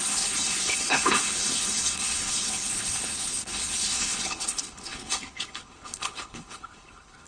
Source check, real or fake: fake